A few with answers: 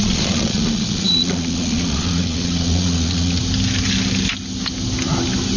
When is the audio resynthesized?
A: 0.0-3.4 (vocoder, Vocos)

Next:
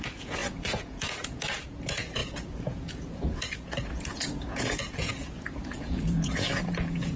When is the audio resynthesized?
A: 0.0-7.2 (vocoder, Vocos)

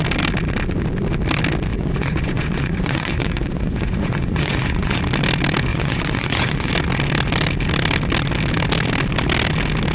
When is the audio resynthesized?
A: 1.7-5.0 (vocoder, Vocos); 5.7-6.7

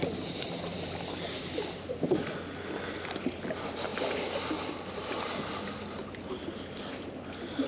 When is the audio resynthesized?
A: none

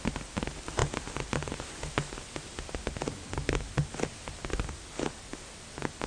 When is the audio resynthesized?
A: none

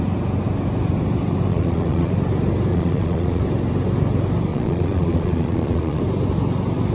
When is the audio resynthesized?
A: 1.5-2.1 (vocoder, Vocos); 2.7-3.4; 4.5-6.0

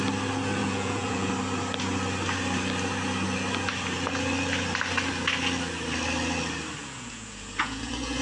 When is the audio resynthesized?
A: 0.6-1.3 (vocoder, Vocos); 6.8-8.2

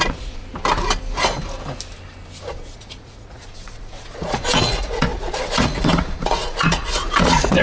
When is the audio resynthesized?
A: 0.0-0.4 (vocoder, Vocos); 2.5-7.6